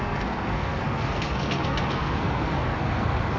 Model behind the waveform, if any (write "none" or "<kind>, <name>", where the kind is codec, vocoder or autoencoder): codec, SNAC